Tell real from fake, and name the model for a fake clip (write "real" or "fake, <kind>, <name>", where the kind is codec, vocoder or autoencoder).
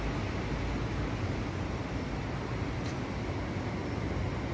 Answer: real